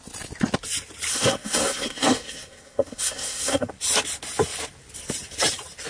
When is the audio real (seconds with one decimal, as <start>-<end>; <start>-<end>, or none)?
0.0-1.1; 3.7-5.9